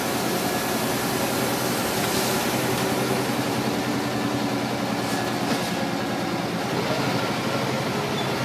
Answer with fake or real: real